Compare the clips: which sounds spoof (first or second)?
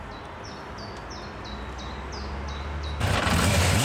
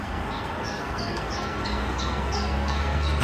second